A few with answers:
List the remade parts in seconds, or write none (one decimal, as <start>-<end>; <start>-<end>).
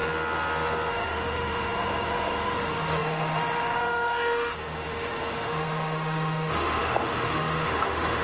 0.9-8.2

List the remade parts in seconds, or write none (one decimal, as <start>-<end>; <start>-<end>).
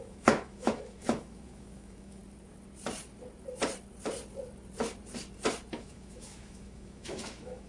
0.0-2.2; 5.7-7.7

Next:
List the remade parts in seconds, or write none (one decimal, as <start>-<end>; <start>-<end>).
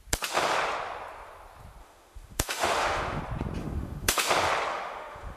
1.8-3.2; 3.6-4.3; 4.7-5.4